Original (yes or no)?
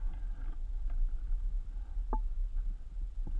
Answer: yes